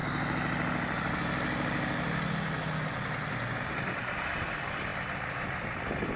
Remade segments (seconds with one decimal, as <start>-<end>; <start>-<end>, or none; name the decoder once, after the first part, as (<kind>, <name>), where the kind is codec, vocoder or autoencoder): none